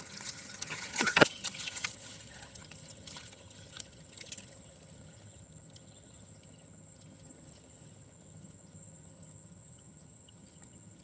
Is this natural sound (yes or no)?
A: no